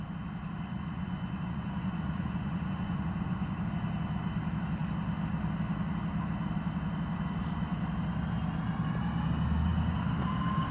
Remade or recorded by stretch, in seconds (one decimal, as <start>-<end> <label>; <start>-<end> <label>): 0.0-0.7 recorded; 0.7-3.6 remade; 3.6-10.7 recorded